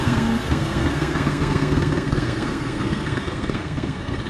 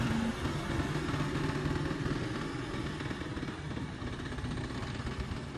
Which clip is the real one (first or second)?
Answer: second